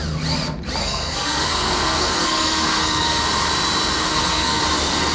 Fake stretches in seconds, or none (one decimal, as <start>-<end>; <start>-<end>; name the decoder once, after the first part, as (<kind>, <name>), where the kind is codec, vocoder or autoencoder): 0.8-3.2 (codec, SNAC); 4.1-4.6